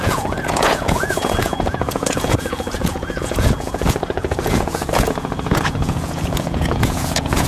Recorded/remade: remade